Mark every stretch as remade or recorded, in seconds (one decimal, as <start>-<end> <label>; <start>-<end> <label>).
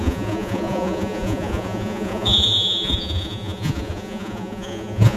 0.0-5.2 remade